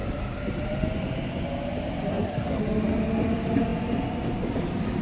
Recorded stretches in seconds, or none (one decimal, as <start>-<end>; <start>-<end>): 0.0-2.1; 2.6-5.0